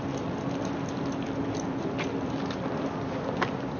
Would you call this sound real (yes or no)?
yes